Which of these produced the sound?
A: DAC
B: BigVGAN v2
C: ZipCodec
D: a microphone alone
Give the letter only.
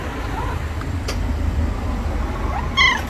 D